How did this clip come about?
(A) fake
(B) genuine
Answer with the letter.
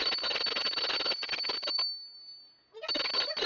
B